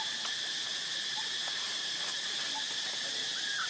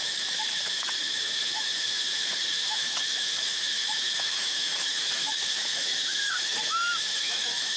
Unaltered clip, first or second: first